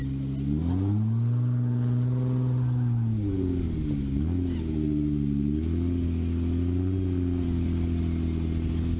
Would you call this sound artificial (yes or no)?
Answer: no